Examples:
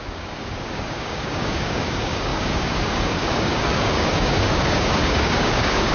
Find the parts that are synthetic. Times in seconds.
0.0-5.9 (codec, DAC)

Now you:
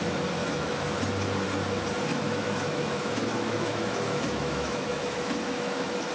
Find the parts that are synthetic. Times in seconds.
0.4-1.0 (autoencoder, DAC-VAE); 2.1-6.1

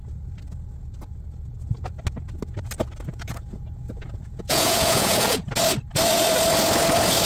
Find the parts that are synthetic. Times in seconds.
3.1-5.5 (vocoder, Vocos)

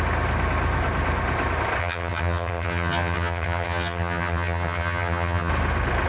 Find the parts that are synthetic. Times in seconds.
1.8-5.5 (vocoder, HiFi-GAN)

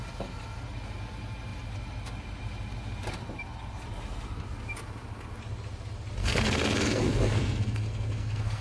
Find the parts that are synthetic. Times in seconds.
6.2-8.6 (codec, SNAC)